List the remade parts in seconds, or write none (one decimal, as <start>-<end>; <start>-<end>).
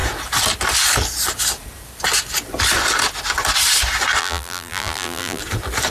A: 4.2-5.4